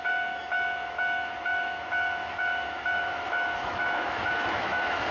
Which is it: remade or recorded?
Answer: remade